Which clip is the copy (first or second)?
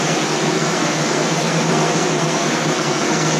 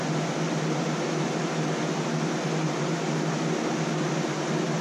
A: first